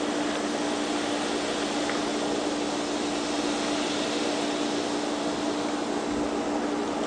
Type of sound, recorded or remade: recorded